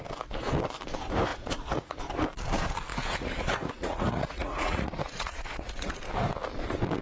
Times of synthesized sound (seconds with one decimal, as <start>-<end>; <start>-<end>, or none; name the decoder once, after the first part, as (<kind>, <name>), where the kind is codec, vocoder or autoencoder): 1.3-2.0 (vocoder, Vocos); 2.9-6.0